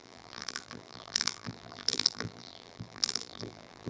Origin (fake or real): fake